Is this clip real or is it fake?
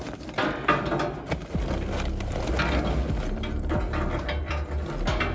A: real